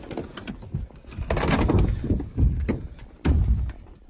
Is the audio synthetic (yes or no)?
no